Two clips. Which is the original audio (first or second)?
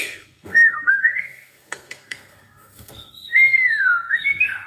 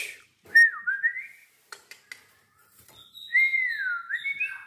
second